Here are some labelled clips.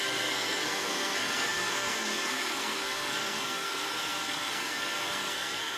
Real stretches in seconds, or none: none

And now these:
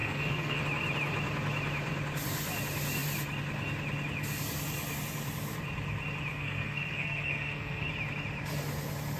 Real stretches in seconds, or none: 0.6-6.3; 7.9-9.2